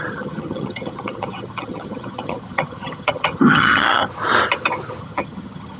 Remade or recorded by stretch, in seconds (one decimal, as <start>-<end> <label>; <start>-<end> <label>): 0.0-4.1 remade; 4.1-5.0 recorded; 5.0-5.8 remade